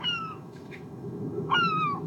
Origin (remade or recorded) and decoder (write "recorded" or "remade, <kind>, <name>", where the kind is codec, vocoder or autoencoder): remade, autoencoder, DAC-VAE